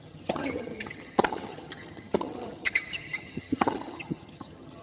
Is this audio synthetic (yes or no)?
yes